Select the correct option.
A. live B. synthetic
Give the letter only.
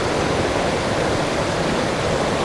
B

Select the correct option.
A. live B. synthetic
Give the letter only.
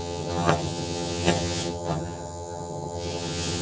B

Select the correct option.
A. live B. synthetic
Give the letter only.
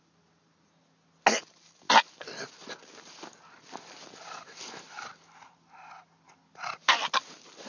A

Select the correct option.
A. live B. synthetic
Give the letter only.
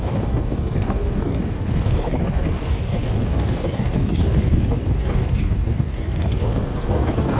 B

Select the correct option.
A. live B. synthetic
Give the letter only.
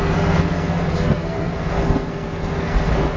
B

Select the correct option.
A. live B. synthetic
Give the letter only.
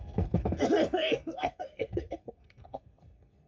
B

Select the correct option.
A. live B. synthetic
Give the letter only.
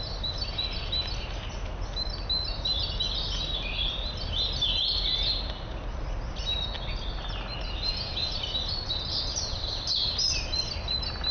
A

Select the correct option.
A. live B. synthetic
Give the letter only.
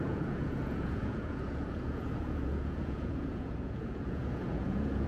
B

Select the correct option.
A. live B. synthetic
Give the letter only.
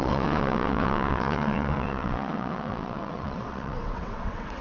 B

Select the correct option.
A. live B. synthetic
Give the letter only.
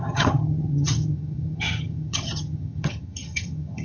B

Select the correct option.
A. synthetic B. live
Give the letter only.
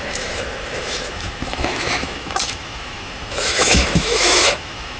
A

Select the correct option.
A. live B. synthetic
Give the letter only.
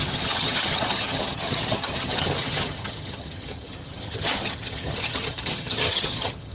B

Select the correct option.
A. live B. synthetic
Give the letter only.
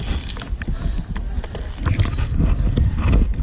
A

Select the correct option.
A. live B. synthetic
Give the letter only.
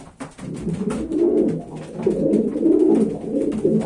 A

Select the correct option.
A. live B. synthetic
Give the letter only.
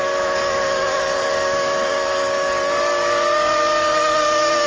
B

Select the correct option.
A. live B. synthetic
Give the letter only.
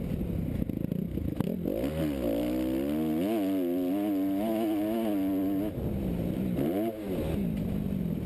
A